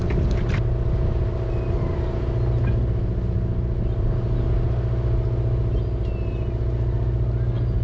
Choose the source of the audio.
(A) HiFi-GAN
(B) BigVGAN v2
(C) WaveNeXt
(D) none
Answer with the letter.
D